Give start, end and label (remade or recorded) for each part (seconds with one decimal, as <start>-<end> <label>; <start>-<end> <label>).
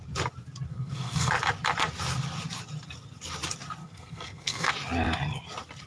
0.0-0.7 recorded; 0.7-1.3 remade; 1.3-3.8 recorded; 3.8-4.7 remade; 4.7-5.9 recorded